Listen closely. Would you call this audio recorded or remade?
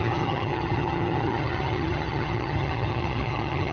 remade